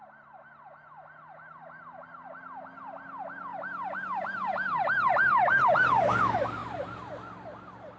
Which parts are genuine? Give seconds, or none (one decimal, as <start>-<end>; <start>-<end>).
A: 0.0-3.5; 5.1-6.6; 7.1-8.0

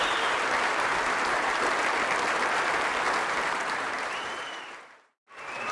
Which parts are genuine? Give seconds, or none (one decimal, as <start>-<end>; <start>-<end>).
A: 0.9-3.3